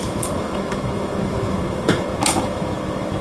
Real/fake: fake